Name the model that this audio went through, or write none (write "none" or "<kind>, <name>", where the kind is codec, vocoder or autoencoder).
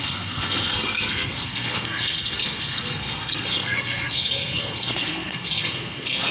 codec, SNAC